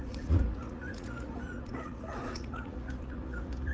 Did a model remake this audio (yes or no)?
yes